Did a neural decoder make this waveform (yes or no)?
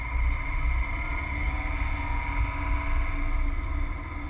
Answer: no